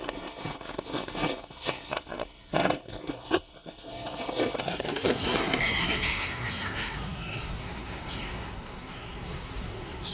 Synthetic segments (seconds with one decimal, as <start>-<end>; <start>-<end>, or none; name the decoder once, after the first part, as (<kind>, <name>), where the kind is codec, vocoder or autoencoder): 0.0-10.1 (codec, SNAC)